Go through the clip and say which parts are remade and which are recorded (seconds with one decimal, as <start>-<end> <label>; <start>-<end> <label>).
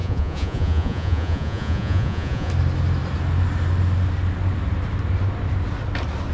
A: 0.0-2.5 remade; 2.5-6.3 recorded